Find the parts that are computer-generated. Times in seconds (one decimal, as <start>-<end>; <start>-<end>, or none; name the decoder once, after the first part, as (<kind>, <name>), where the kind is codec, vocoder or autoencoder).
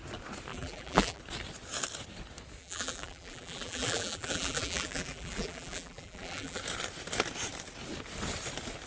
0.5-1.2 (vocoder, BigVGAN v2); 2.6-6.6